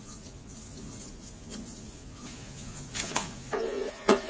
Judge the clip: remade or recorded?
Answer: remade